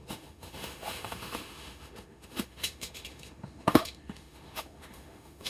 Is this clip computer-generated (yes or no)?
yes